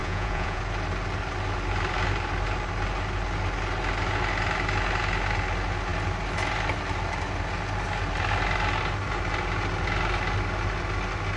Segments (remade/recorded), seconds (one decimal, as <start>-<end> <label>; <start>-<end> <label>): 0.0-0.6 remade; 0.6-11.4 recorded